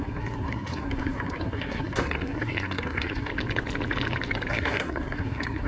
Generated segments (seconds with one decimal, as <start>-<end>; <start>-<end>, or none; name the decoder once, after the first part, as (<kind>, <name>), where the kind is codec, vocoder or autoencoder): 0.0-3.3 (codec, SNAC); 4.5-5.7